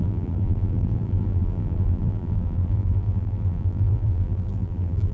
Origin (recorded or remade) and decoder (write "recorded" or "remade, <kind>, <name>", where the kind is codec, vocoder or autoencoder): remade, vocoder, BigVGAN v2